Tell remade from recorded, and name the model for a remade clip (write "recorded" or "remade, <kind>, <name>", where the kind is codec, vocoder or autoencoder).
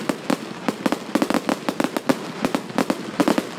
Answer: recorded